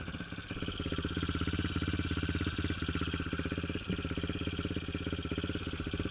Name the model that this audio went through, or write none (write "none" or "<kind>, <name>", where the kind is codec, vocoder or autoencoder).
none